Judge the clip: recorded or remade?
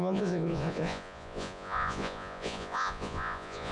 remade